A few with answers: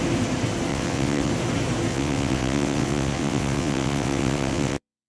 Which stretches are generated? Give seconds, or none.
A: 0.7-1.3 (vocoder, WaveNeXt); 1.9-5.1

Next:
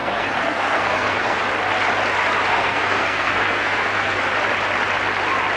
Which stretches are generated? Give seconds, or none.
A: 0.0-1.4 (codec, SNAC); 2.5-4.2

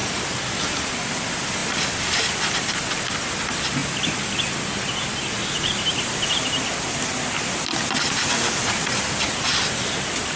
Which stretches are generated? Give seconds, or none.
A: 0.0-0.5 (vocoder, BigVGAN v2)

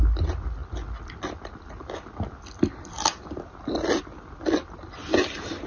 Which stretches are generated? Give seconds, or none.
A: none

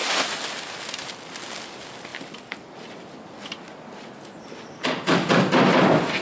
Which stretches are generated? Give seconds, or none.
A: none

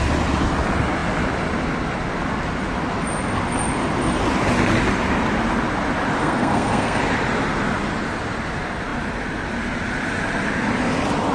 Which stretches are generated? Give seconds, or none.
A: 6.2-7.0 (codec, SNAC)